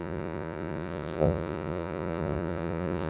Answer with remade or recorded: remade